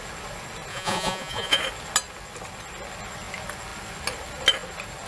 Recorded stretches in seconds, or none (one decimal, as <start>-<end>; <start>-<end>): 0.0-0.7; 1.6-5.1